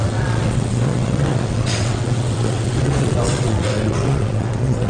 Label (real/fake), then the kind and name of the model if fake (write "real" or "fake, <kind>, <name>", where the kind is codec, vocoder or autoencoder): fake, vocoder, WaveNeXt